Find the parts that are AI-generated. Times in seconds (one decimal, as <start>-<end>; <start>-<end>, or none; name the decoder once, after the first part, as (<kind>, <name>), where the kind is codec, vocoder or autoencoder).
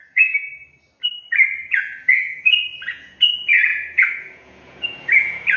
0.0-0.5 (vocoder, Vocos); 1.7-5.6